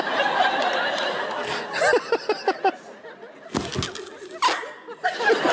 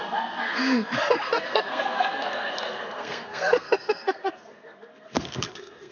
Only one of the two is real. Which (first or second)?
first